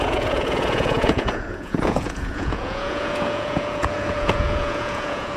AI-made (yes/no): yes